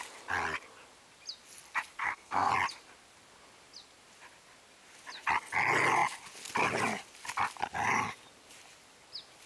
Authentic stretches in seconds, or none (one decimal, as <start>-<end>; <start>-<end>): 0.0-2.0; 2.5-9.5